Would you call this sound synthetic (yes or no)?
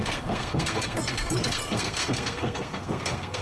yes